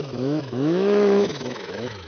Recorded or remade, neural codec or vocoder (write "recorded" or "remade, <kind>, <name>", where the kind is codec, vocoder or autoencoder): remade, autoencoder, DAC-VAE